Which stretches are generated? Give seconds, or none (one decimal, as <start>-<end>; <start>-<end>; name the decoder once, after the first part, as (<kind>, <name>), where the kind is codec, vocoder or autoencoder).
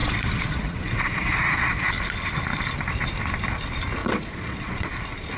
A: 0.0-1.9 (vocoder, Vocos); 4.0-5.0